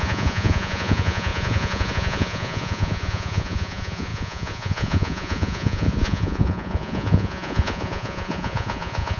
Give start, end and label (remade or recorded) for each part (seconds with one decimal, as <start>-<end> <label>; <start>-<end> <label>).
0.0-9.2 remade